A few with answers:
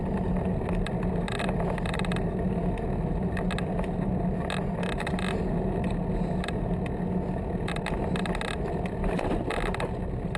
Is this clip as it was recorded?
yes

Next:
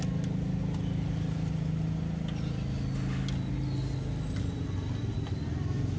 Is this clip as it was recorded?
yes